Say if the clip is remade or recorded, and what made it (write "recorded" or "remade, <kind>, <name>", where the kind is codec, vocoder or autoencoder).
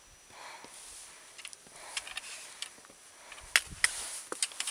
recorded